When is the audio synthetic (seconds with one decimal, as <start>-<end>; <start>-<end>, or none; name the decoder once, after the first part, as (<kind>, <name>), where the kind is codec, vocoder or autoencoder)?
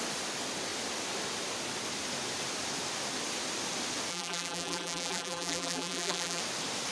4.1-6.4 (vocoder, BigVGAN v2)